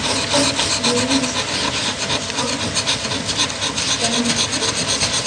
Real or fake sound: real